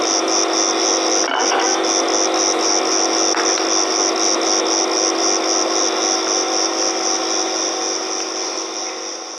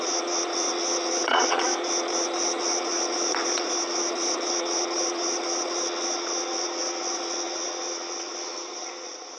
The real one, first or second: first